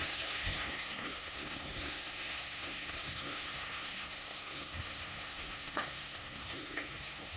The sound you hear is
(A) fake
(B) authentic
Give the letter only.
A